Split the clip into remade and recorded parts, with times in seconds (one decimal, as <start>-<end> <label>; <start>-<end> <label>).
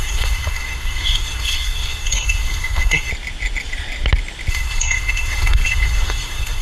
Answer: 0.0-3.1 remade; 3.1-4.5 recorded; 4.5-6.6 remade